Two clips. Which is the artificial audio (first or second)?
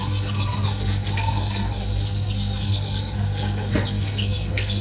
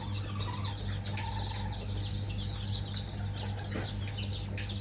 first